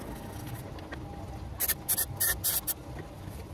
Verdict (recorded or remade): recorded